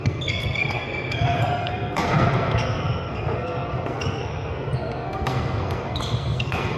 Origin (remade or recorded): remade